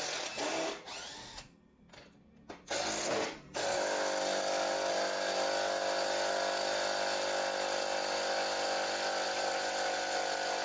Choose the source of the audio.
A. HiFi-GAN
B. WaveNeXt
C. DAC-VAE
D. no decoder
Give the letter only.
D